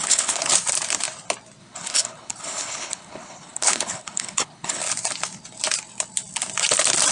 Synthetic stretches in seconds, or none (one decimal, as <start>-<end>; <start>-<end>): 0.0-0.5; 1.6-4.8